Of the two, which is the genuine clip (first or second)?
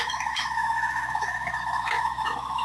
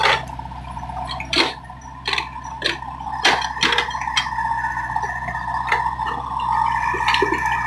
second